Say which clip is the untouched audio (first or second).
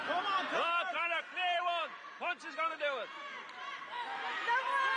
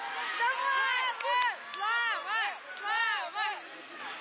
second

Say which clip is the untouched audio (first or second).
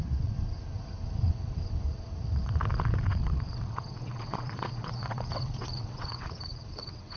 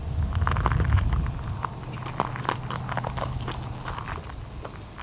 second